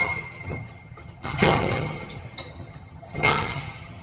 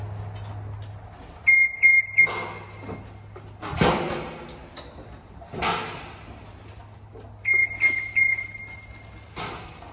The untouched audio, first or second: second